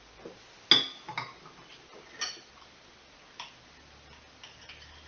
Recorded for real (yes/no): yes